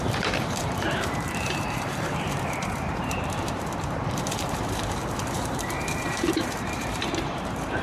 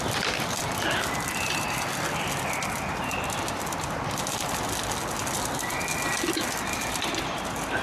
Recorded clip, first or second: second